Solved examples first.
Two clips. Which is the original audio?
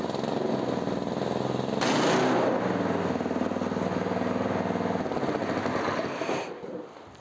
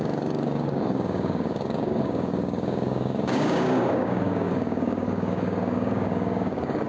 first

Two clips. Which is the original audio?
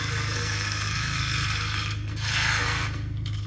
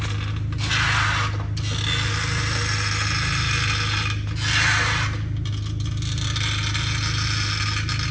second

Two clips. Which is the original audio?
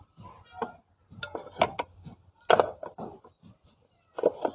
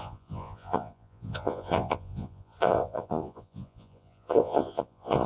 first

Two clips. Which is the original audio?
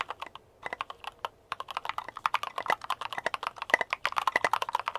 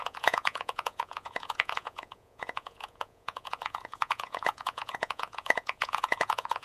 first